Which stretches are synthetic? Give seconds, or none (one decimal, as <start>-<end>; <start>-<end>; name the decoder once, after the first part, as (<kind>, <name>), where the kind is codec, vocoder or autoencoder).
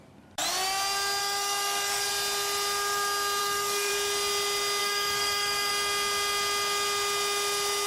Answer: 1.2-2.1 (codec, DAC); 3.4-3.9; 4.8-5.7